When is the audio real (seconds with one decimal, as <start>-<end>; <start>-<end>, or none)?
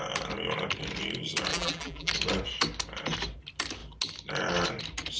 0.0-1.5; 2.1-5.2